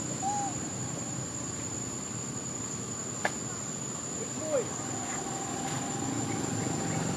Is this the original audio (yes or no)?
yes